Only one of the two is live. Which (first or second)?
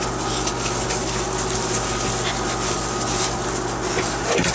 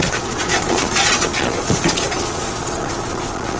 first